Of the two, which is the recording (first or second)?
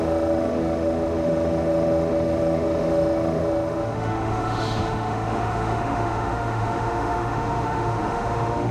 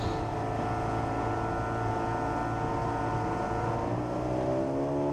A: second